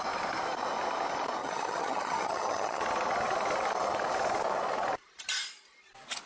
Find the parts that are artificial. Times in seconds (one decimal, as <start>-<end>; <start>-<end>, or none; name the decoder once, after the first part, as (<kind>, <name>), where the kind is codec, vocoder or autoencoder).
1.4-2.8 (vocoder, HiFi-GAN)